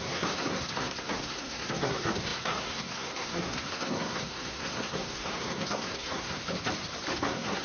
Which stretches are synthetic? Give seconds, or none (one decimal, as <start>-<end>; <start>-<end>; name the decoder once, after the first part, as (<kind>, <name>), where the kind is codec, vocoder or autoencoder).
0.0-6.4 (codec, SNAC); 7.1-7.6

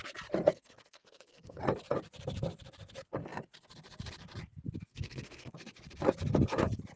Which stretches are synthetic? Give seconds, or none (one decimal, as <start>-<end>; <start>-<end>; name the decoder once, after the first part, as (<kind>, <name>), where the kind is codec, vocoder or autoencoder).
0.5-1.6 (codec, SNAC); 4.9-5.5

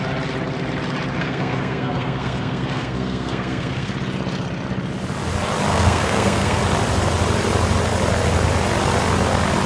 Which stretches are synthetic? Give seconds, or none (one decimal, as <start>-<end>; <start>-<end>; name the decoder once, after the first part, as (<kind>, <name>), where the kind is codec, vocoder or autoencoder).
1.2-3.9 (codec, SNAC); 5.7-6.6

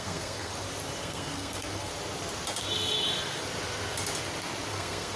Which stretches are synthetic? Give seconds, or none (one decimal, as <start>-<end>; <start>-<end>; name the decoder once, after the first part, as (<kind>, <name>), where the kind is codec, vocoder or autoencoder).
0.0-0.5 (codec, SNAC); 1.0-1.9; 4.7-5.2

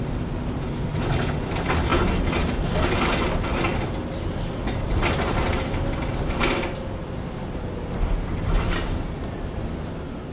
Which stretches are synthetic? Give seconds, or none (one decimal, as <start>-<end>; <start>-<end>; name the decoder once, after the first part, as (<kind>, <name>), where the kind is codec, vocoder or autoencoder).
none